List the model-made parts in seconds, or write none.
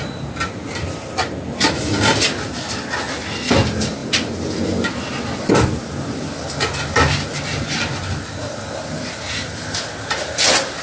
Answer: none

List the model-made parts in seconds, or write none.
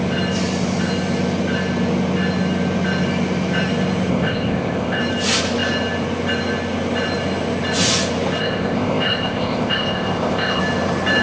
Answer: 4.1-5.0 (codec, ZipCodec); 8.4-10.6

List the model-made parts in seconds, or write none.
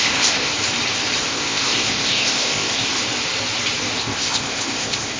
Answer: 0.0-0.5 (codec, ZipCodec); 1.2-3.0; 4.0-5.2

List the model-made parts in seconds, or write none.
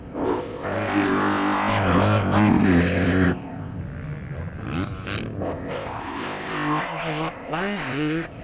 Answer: 0.0-3.8 (codec, ZipCodec); 5.4-8.4